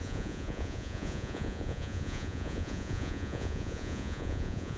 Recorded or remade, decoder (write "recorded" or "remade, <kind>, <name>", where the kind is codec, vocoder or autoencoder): remade, vocoder, Vocos